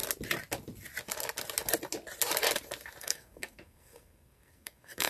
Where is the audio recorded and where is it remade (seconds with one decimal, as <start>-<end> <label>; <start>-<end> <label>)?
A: 0.0-3.0 recorded; 3.0-5.1 remade